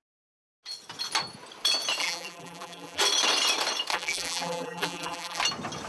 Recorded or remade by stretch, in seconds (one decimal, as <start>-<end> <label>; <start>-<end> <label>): 0.0-2.0 recorded; 2.0-3.0 remade; 3.0-3.9 recorded; 3.9-5.4 remade; 5.4-5.9 recorded

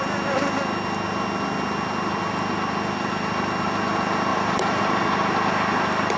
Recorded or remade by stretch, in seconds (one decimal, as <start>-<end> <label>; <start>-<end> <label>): 0.0-4.3 recorded; 4.3-4.8 remade; 4.8-6.2 recorded

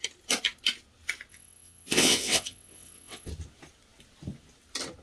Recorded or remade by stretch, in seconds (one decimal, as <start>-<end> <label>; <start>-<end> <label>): 0.0-1.3 recorded; 1.3-3.3 remade; 3.3-5.0 recorded

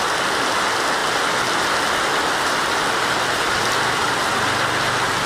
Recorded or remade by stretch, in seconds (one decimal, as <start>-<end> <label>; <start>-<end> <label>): 0.0-5.3 recorded

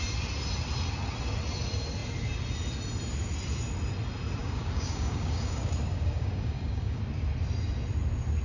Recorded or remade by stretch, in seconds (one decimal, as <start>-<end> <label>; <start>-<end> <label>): 0.0-4.4 recorded; 4.4-7.0 remade; 7.0-8.4 recorded

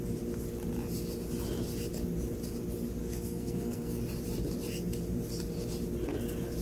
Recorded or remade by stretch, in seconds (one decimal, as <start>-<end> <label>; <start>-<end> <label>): 0.0-3.0 recorded; 3.0-4.0 remade; 4.0-6.6 recorded

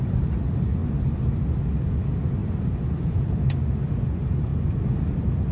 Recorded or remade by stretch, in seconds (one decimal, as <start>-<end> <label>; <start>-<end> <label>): 0.0-5.5 recorded